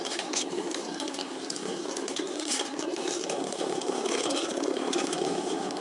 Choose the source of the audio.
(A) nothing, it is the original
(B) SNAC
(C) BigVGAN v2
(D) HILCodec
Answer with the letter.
B